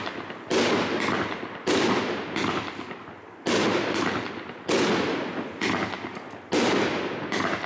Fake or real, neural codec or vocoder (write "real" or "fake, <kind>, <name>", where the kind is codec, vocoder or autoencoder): real